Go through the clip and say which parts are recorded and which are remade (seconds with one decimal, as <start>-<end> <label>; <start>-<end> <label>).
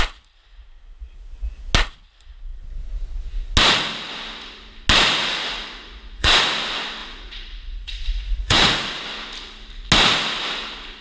0.0-5.2 recorded; 5.2-6.4 remade; 6.4-7.0 recorded; 7.0-9.0 remade; 9.0-11.0 recorded